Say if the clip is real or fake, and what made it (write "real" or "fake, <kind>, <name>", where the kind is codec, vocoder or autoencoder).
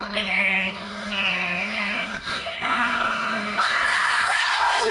fake, codec, SNAC